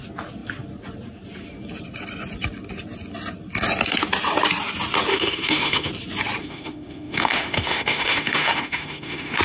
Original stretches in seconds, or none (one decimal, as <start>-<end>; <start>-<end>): 0.0-5.1; 5.9-6.4